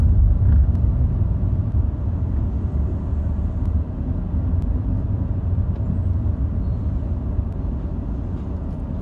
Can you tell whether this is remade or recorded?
recorded